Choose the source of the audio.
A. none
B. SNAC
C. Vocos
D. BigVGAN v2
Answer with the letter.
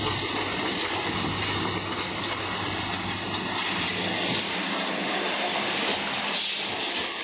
A